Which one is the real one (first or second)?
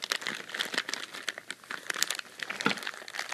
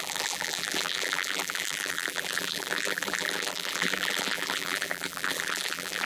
first